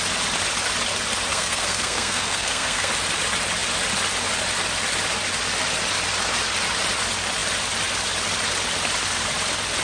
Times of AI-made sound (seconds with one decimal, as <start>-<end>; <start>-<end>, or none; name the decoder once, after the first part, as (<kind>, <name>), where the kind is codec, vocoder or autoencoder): 1.3-2.9 (codec, SNAC)